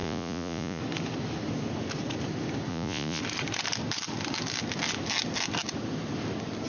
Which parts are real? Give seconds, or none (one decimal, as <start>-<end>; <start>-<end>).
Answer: 0.8-2.7; 3.2-6.7